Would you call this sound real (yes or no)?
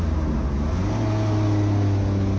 yes